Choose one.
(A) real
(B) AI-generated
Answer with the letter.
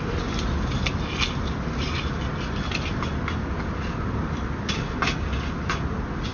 A